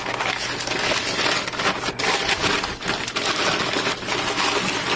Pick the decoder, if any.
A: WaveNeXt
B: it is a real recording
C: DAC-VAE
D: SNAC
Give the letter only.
B